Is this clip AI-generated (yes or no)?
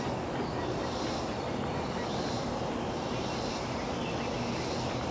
no